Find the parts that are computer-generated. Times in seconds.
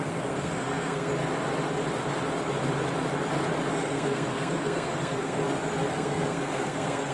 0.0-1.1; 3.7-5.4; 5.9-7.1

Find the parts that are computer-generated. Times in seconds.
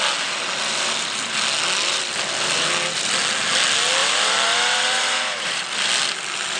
4.0-5.6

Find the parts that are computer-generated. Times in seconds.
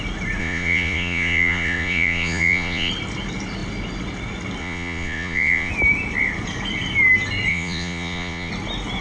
0.4-2.9; 4.6-5.7; 7.5-8.5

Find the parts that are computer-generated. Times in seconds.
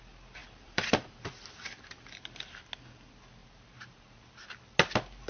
0.4-2.0; 3.4-4.2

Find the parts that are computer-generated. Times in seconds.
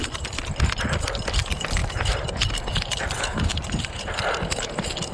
1.8-2.4; 3.5-4.0